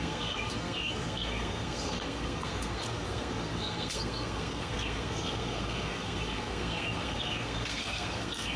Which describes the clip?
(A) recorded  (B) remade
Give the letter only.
B